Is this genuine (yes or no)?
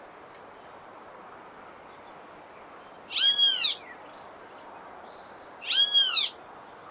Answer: yes